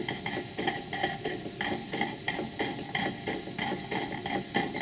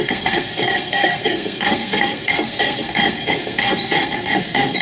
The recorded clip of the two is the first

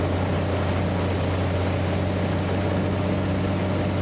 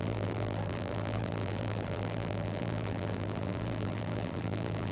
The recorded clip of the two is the first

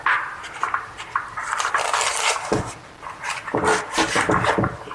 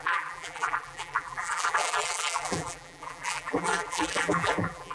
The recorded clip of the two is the first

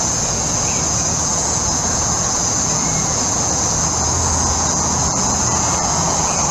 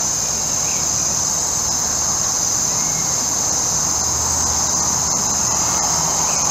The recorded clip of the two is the second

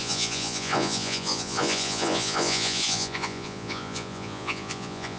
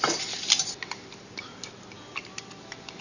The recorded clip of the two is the second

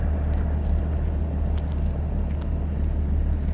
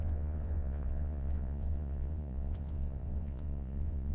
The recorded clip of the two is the first